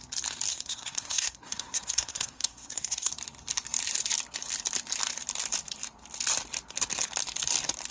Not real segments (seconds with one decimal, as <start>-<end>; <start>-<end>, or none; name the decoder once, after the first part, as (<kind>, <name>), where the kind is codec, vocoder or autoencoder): 0.5-3.1 (codec, SNAC)